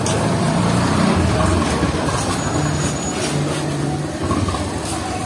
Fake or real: real